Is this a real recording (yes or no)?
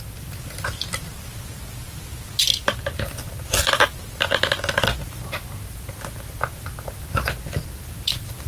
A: yes